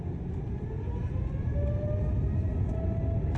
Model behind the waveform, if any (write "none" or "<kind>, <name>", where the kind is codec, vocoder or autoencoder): none